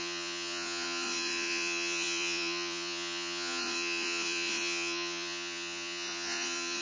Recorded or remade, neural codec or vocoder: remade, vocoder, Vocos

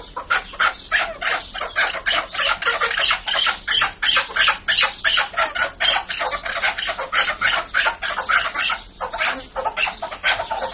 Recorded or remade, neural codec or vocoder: recorded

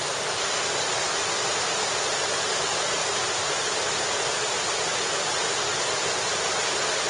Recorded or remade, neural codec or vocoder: recorded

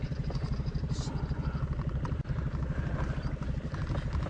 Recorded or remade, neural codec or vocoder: recorded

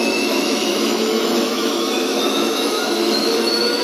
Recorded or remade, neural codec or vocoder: remade, autoencoder, DAC-VAE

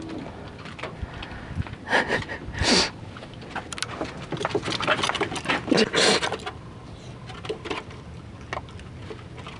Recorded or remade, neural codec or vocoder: recorded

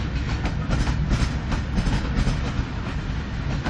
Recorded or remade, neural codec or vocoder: recorded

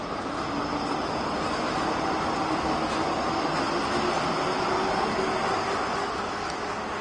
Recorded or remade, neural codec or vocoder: recorded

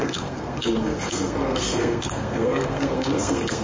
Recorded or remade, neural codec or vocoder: remade, codec, SNAC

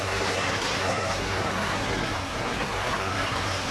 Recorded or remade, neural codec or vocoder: remade, codec, SNAC